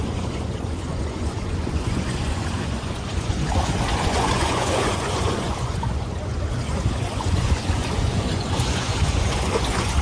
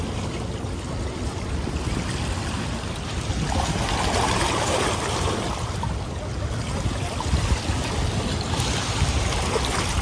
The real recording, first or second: second